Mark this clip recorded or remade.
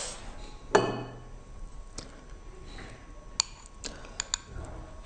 recorded